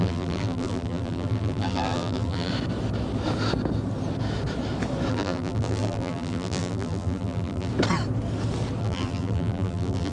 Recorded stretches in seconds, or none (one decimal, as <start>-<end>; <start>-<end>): 2.5-5.1; 7.7-8.8